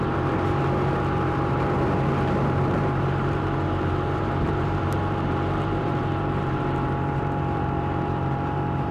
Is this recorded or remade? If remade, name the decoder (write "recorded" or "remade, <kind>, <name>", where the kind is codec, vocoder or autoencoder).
remade, vocoder, BigVGAN v2